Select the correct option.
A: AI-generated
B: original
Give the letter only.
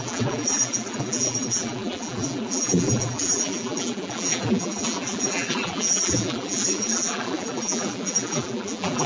A